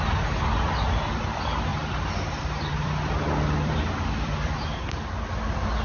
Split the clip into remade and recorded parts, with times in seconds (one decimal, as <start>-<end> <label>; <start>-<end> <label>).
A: 0.0-1.7 recorded; 1.7-5.2 remade; 5.2-5.8 recorded